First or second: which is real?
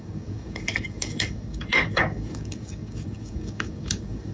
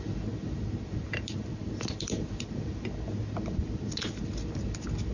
second